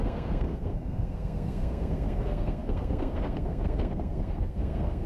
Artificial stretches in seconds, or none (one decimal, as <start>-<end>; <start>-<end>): 0.0-5.1

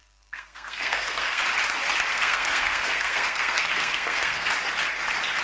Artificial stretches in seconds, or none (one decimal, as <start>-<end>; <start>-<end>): 0.0-1.4; 2.1-4.5

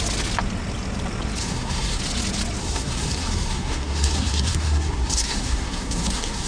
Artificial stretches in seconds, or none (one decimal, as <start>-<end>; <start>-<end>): 1.4-2.0; 2.6-6.5

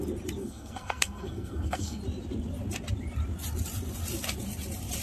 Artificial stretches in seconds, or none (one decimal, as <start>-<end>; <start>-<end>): 0.4-2.0

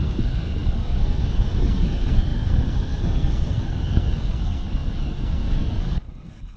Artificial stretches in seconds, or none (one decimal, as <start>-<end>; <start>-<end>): 0.0-6.6

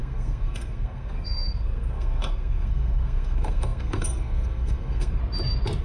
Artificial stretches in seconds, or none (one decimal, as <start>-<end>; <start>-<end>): 0.0-5.2